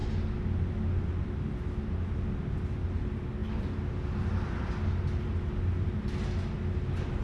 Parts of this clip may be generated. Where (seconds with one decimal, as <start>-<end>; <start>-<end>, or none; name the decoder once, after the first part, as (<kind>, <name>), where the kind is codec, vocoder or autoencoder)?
none